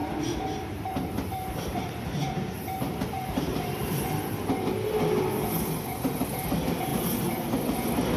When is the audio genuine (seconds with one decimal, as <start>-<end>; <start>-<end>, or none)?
1.6-2.2; 4.0-8.2